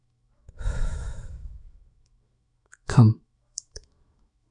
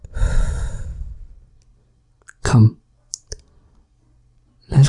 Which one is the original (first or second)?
second